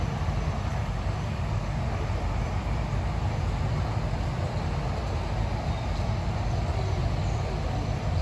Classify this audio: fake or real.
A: real